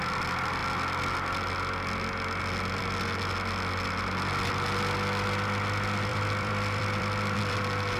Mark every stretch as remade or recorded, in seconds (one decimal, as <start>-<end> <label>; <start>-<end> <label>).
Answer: 0.0-6.1 recorded; 6.1-7.4 remade; 7.4-8.0 recorded